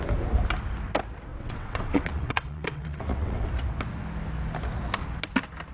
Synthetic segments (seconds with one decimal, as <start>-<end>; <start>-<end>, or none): 1.3-3.5